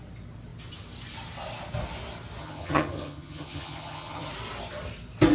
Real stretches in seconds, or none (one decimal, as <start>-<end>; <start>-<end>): 0.0-2.4; 4.3-5.3